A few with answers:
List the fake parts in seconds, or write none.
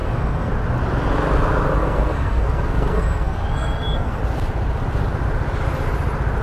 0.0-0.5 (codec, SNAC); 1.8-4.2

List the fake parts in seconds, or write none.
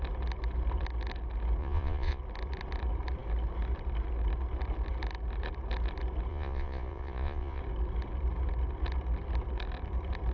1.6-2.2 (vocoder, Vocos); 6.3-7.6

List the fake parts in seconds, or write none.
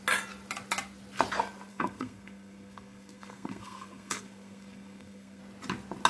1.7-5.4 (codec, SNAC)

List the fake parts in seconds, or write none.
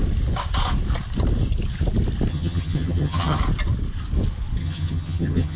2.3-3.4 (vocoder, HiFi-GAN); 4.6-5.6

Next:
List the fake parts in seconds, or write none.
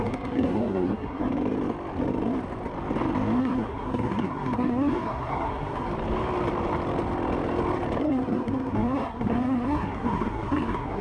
0.0-1.3 (codec, SNAC); 3.4-5.9; 8.0-11.0